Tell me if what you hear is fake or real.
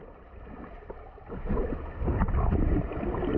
real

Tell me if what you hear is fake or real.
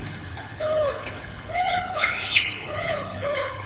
fake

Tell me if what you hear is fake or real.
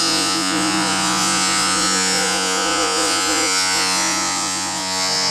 fake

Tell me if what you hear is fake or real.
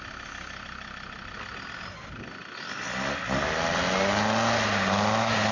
real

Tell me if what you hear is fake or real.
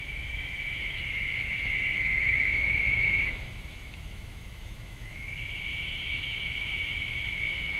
fake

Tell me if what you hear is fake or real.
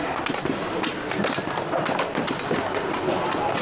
real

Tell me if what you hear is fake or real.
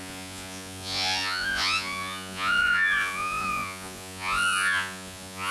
fake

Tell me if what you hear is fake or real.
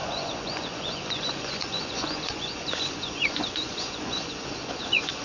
fake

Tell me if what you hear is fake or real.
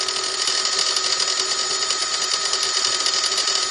real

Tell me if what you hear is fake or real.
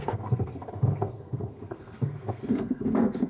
fake